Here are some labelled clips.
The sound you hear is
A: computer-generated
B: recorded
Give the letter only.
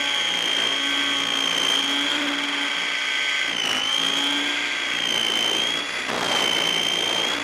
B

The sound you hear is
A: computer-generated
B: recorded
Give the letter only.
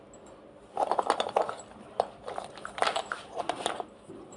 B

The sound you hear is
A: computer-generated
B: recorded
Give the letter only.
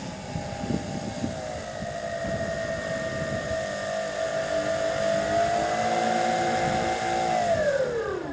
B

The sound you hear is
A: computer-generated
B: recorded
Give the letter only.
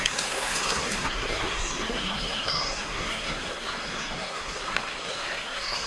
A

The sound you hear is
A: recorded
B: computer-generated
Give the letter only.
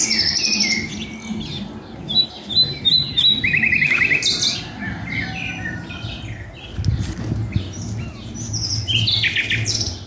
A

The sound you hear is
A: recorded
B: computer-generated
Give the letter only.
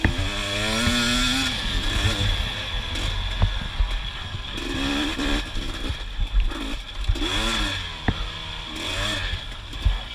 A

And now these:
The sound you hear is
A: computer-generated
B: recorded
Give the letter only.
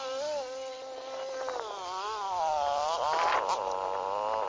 B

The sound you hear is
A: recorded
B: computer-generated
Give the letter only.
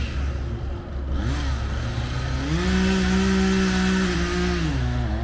A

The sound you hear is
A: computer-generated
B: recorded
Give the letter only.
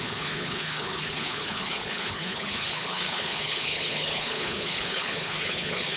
A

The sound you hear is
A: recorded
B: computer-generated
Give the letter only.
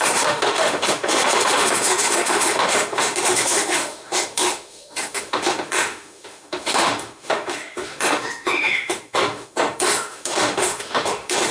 B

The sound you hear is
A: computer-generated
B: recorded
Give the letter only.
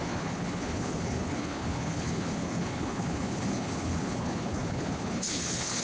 A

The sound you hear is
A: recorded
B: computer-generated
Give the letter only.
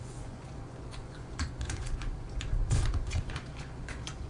B